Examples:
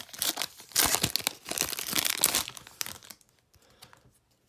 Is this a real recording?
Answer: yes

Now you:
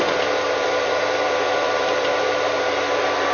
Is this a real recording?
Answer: no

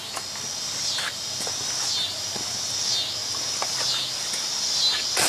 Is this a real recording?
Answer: yes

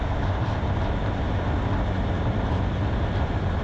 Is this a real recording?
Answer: no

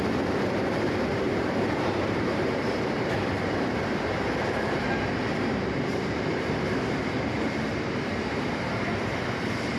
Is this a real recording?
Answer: no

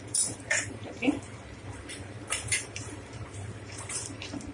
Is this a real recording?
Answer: no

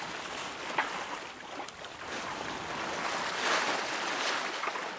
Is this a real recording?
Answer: yes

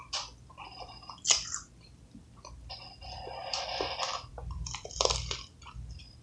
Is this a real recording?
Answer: no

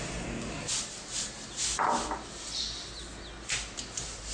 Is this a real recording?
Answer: yes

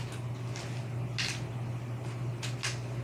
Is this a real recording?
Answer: yes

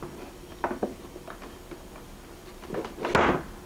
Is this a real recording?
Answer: yes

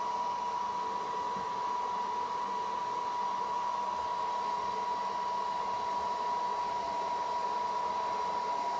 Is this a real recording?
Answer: yes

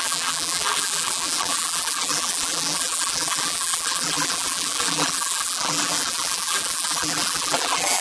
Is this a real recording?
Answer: no